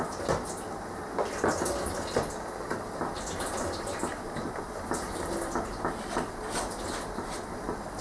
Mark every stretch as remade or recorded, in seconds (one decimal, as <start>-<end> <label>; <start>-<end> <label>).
0.0-4.1 recorded; 4.1-8.0 remade

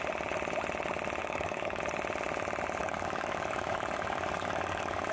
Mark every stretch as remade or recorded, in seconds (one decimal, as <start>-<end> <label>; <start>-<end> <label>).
0.0-1.2 recorded; 1.2-1.8 remade; 1.8-2.8 recorded; 2.8-5.1 remade

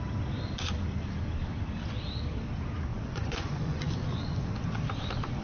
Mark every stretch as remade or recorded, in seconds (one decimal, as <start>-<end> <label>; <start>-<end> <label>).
0.0-2.9 recorded; 2.9-4.8 remade; 4.8-5.4 recorded

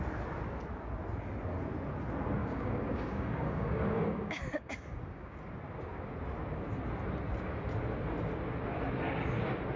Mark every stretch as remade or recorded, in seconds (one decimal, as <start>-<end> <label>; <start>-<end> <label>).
0.0-2.4 recorded; 2.4-5.4 remade; 5.4-9.8 recorded

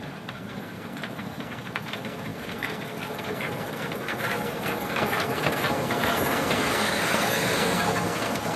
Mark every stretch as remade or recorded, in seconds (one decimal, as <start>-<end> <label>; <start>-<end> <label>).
0.0-8.6 remade

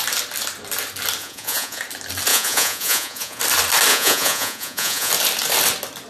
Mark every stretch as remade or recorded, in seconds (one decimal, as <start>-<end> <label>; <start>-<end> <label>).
0.0-1.2 recorded; 1.2-1.8 remade; 1.8-2.3 recorded; 2.3-3.4 remade; 3.4-3.9 recorded; 3.9-5.1 remade; 5.1-6.1 recorded